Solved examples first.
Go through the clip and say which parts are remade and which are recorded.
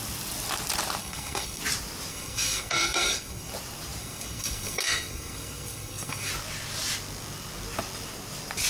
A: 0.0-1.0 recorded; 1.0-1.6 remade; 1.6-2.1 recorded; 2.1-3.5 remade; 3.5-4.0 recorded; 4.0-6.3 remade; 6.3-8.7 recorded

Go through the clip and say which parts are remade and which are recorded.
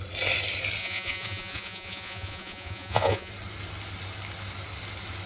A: 0.0-0.8 recorded; 0.8-3.3 remade; 3.3-5.3 recorded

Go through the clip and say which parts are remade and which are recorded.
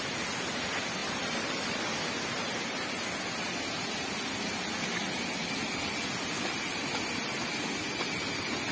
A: 0.0-1.0 recorded; 1.0-2.1 remade; 2.1-8.7 recorded